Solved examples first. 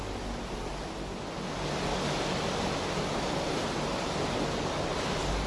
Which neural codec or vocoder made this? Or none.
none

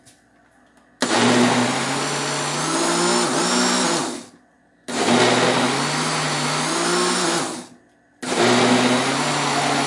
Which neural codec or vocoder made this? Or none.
none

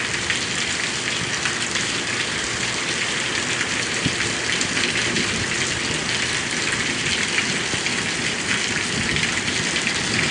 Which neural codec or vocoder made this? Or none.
vocoder, BigVGAN v2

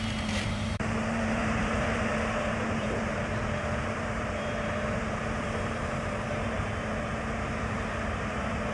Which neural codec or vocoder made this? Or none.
vocoder, BigVGAN v2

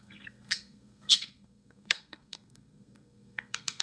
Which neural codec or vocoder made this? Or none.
codec, SNAC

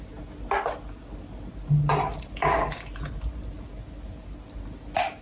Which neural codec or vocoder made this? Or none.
none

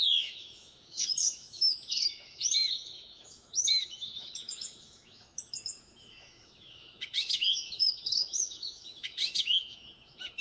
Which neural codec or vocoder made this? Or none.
autoencoder, DAC-VAE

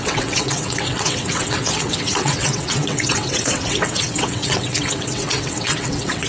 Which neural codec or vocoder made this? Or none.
vocoder, WaveNeXt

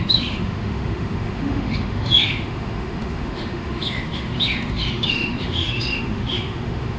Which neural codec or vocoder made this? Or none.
autoencoder, DAC-VAE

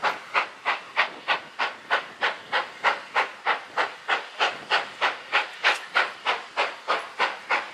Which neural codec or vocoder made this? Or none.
none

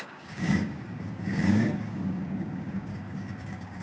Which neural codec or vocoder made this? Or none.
codec, DAC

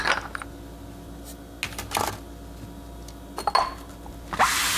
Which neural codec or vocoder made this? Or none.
none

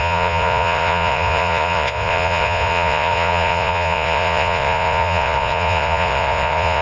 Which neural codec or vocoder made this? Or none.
vocoder, Vocos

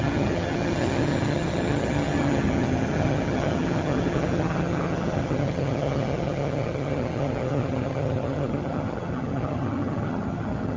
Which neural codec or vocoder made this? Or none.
vocoder, HiFi-GAN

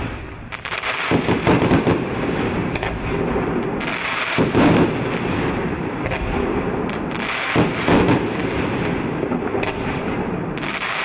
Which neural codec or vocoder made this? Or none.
vocoder, BigVGAN v2